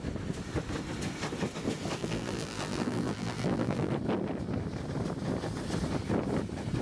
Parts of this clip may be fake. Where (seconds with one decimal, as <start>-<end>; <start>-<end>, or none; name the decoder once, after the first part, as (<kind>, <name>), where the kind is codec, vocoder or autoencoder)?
2.0-3.9 (vocoder, BigVGAN v2)

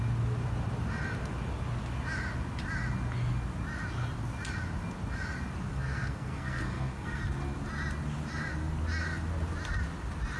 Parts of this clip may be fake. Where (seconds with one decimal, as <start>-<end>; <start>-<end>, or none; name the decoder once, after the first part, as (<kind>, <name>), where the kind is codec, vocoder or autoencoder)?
5.7-7.2 (codec, SNAC)

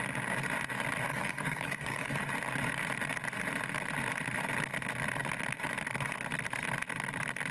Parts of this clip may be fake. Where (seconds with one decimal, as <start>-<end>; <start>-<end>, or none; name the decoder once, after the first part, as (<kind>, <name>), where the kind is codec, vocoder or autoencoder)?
1.1-2.2 (codec, DAC)

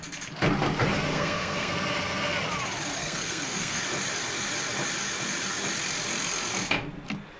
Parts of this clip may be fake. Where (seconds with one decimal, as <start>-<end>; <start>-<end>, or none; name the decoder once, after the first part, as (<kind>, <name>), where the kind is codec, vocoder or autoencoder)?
1.1-1.7 (codec, SNAC); 3.0-3.8